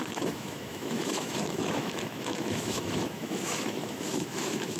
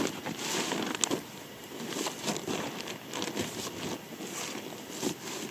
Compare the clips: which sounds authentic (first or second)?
second